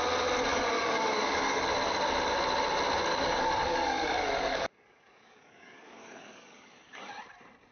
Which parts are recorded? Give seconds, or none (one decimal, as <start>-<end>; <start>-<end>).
0.0-0.5; 1.6-3.1; 7.1-7.7